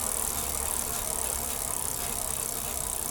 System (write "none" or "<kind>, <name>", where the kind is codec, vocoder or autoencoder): none